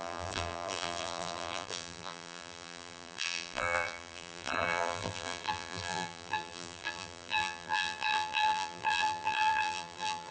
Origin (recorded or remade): remade